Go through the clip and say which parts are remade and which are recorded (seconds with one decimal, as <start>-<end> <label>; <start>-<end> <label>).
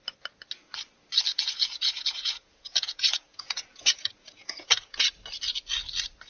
0.0-1.3 recorded; 1.3-5.1 remade; 5.1-6.3 recorded